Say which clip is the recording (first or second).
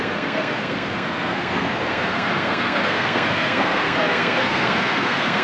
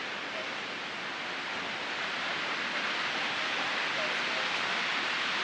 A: second